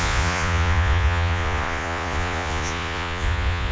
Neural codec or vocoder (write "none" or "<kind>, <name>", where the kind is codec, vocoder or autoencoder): vocoder, Vocos